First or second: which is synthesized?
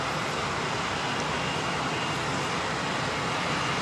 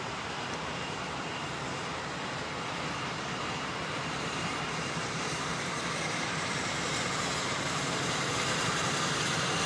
second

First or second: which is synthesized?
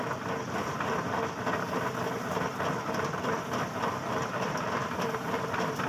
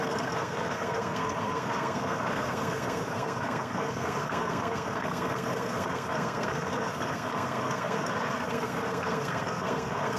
second